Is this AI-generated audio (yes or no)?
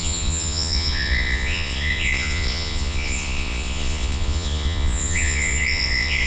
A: yes